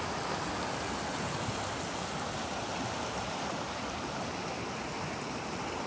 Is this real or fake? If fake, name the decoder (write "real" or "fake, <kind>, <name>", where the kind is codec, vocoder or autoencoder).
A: real